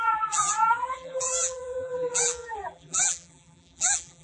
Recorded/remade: remade